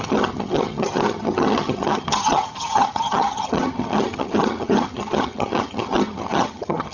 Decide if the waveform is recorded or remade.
remade